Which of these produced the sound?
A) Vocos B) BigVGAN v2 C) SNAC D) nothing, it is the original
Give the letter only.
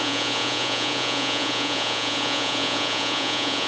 A